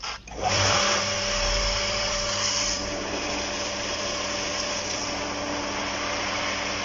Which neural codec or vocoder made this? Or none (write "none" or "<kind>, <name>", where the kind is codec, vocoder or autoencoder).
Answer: vocoder, BigVGAN v2